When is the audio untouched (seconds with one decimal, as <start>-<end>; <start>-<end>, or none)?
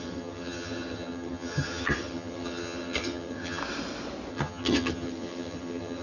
3.6-4.3